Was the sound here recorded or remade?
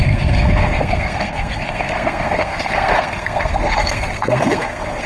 remade